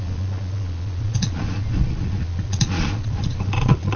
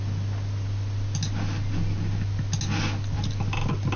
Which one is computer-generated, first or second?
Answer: first